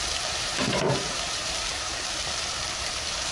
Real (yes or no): no